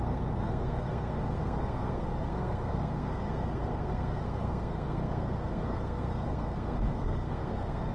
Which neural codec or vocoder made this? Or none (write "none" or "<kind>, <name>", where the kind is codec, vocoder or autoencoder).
codec, SNAC